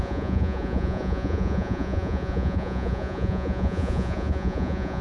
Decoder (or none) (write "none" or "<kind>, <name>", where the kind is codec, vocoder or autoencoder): vocoder, Vocos